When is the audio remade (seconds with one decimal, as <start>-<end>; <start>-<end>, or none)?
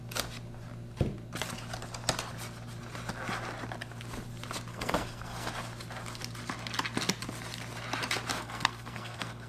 4.7-5.5; 8.3-9.5